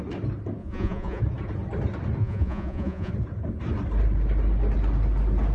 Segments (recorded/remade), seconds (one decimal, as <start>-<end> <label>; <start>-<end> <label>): 0.0-0.6 recorded; 0.6-1.2 remade; 1.2-2.2 recorded; 2.2-3.1 remade; 3.1-5.5 recorded